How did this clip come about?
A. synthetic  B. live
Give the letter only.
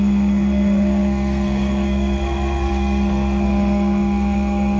A